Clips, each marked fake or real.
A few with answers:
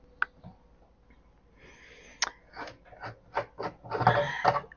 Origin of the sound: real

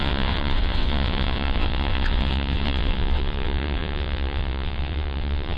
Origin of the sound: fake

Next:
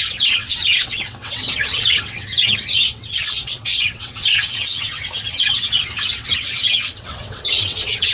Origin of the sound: fake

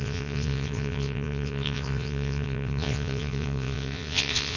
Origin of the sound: fake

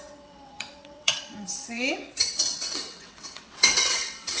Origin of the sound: fake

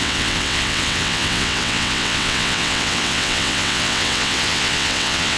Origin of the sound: fake